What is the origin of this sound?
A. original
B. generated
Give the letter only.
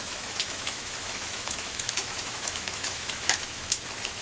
B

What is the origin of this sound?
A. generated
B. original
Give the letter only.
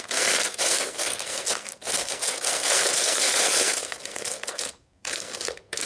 A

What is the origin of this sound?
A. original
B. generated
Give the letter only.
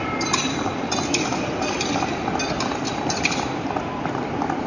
A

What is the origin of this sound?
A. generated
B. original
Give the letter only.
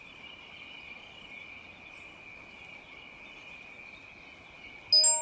B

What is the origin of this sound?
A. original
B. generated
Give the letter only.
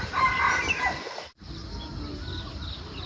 A